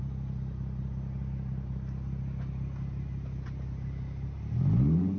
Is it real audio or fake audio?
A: real